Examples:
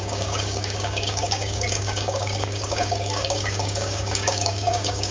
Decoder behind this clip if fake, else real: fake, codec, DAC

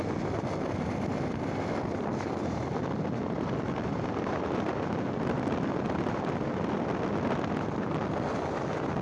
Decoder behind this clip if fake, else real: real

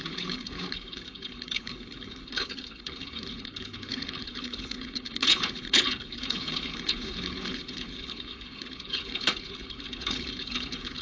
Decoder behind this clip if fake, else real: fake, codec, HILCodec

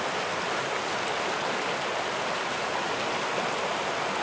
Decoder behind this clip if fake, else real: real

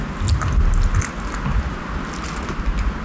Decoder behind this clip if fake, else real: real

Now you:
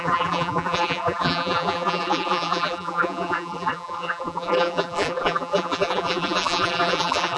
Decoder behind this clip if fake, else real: fake, vocoder, BigVGAN v2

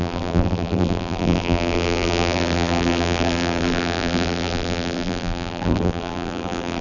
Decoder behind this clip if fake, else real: fake, vocoder, BigVGAN v2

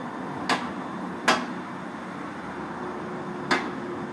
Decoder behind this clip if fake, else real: real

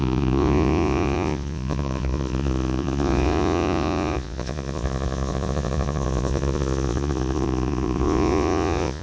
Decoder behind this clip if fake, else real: fake, vocoder, Vocos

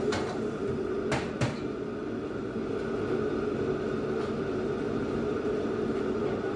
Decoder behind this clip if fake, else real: real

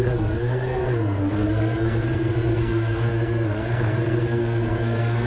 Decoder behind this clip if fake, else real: fake, codec, SNAC